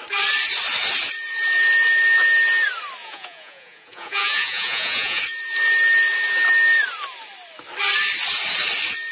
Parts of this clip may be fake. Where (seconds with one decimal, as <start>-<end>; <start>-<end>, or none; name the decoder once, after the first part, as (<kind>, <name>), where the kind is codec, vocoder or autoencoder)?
3.0-5.2 (vocoder, Vocos)